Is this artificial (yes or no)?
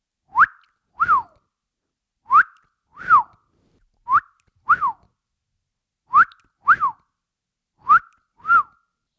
no